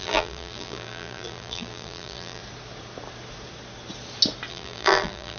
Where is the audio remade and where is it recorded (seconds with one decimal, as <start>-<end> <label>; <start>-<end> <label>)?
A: 0.0-2.4 remade; 2.4-4.5 recorded; 4.5-5.4 remade

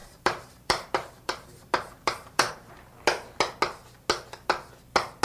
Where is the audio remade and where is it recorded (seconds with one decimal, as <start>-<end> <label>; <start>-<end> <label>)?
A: 0.0-2.7 remade; 2.7-5.2 recorded